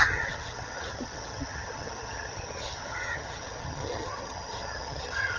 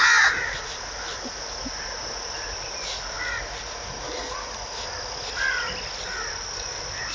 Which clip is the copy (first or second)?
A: first